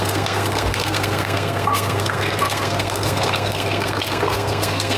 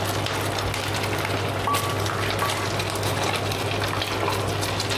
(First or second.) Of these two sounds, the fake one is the first